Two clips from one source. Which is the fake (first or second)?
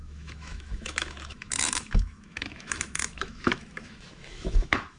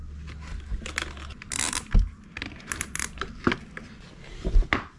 first